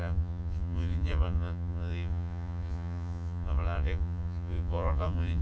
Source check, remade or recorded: remade